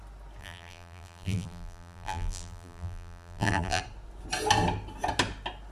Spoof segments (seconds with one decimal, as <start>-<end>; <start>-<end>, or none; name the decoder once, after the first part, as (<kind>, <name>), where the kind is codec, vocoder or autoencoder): 0.4-3.8 (vocoder, BigVGAN v2)